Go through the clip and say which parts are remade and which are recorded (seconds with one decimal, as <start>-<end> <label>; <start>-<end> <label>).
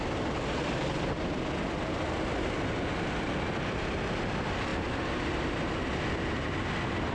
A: 0.0-7.1 recorded